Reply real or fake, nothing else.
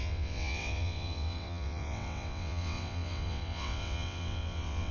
fake